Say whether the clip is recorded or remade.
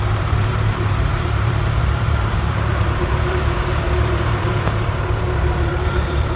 remade